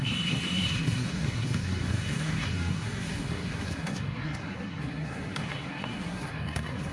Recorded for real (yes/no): no